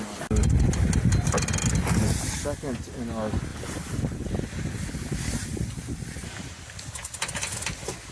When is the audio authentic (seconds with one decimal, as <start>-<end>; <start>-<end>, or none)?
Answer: 0.0-3.5; 4.3-5.5; 6.1-8.1